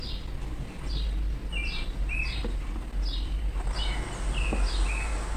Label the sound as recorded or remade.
recorded